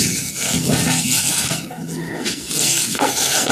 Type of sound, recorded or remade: remade